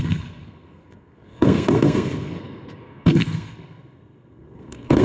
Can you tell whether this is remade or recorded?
remade